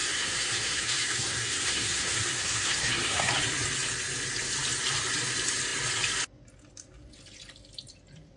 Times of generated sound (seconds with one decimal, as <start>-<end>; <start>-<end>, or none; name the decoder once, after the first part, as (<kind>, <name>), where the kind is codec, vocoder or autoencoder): 0.0-3.3 (codec, SNAC)